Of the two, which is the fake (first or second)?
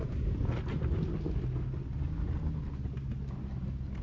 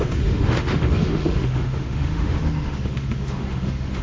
second